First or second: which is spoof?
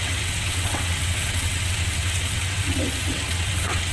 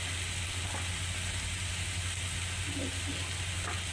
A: first